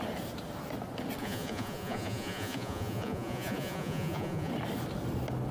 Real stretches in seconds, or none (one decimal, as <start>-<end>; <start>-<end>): 0.0-1.2; 4.5-5.5